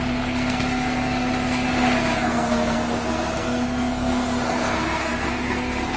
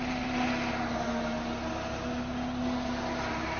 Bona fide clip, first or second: second